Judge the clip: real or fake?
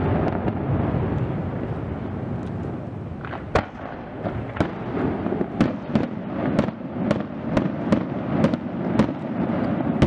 real